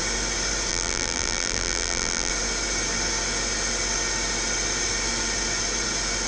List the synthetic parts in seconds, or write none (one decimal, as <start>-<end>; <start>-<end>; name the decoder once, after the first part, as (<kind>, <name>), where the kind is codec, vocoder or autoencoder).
0.7-2.3 (vocoder, BigVGAN v2)